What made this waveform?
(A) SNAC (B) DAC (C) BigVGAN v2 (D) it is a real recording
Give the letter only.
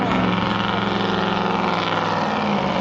D